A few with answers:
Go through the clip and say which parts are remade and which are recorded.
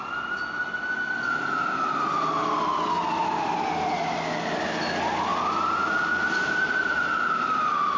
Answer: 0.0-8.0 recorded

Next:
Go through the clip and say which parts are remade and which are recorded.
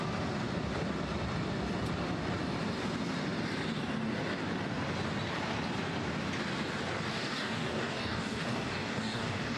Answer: 0.0-7.1 recorded; 7.1-9.6 remade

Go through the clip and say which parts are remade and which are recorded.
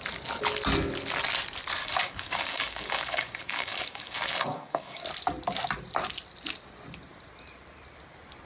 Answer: 0.0-1.8 recorded; 1.8-5.0 remade; 5.0-8.5 recorded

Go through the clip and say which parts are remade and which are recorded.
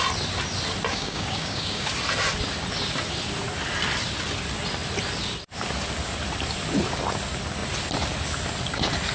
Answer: 0.0-0.9 recorded; 0.9-1.9 remade; 1.9-9.1 recorded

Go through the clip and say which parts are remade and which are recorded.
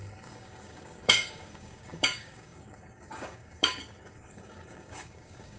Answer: 0.0-5.6 remade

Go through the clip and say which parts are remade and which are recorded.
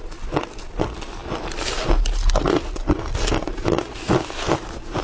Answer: 0.0-5.0 recorded